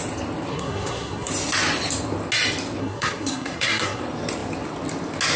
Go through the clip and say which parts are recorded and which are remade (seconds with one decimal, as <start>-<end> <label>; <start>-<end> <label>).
0.0-0.5 recorded; 0.5-1.3 remade; 1.3-2.8 recorded; 2.8-4.0 remade; 4.0-5.4 recorded

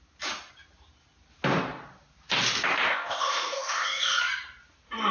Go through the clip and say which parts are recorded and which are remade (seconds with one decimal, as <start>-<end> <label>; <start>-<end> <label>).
0.0-2.9 recorded; 2.9-4.2 remade; 4.2-5.1 recorded

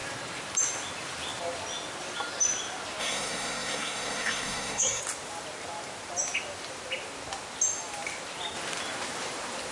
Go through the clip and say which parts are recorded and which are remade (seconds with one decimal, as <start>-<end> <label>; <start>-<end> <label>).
0.0-3.0 recorded; 3.0-5.0 remade; 5.0-9.7 recorded

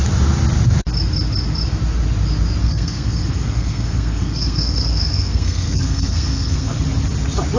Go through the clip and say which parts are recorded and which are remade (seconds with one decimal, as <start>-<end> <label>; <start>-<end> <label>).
0.0-2.6 recorded; 2.6-6.8 remade; 6.8-7.6 recorded

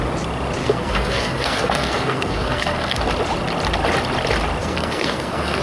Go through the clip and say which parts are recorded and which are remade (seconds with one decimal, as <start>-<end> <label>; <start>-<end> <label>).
0.0-0.6 recorded; 0.6-3.0 remade; 3.0-4.6 recorded; 4.6-5.6 remade

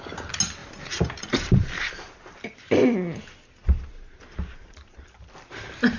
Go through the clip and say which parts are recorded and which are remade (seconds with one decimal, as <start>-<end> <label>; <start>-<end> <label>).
0.0-0.6 recorded; 0.6-2.7 remade; 2.7-3.6 recorded; 3.6-5.5 remade; 5.5-6.0 recorded

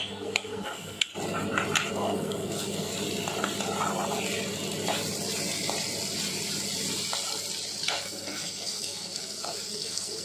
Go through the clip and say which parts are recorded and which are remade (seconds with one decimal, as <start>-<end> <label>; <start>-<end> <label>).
0.0-1.1 remade; 1.1-1.9 recorded; 1.9-2.9 remade; 2.9-7.9 recorded; 7.9-10.2 remade

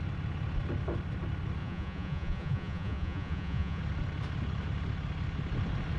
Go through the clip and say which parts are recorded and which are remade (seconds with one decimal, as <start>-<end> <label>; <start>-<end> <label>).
0.0-1.6 recorded; 1.6-3.8 remade; 3.8-6.0 recorded